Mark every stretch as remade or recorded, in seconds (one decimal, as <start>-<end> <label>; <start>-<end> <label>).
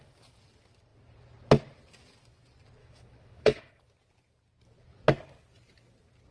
0.0-2.8 recorded; 2.8-3.6 remade; 3.6-6.3 recorded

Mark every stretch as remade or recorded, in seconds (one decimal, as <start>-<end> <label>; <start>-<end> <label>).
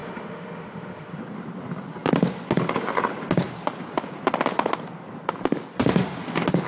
0.0-1.2 remade; 1.2-6.7 recorded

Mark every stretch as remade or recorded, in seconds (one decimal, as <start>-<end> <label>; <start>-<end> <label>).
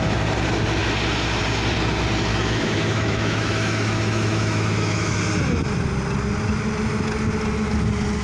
0.0-2.3 recorded; 2.3-5.2 remade; 5.2-8.2 recorded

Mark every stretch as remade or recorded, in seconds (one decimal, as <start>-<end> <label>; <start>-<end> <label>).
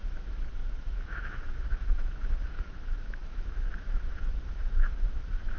0.0-5.6 remade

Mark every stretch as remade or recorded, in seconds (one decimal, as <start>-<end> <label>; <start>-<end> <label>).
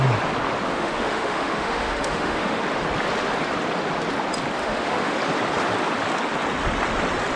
0.0-0.7 recorded; 0.7-2.6 remade; 2.6-4.6 recorded; 4.6-5.2 remade; 5.2-7.4 recorded